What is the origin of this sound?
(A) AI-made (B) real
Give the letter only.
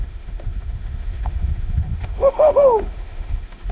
A